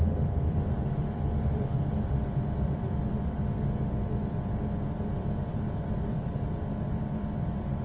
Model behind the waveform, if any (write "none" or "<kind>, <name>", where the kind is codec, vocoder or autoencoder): vocoder, BigVGAN v2